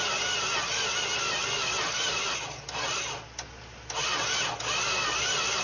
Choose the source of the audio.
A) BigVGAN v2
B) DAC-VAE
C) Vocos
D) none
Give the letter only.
D